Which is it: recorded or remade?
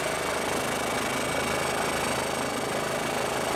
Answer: recorded